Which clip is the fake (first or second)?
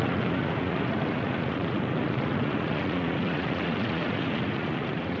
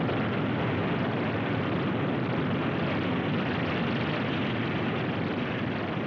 first